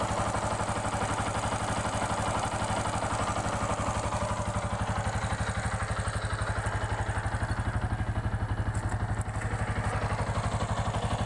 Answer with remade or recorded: recorded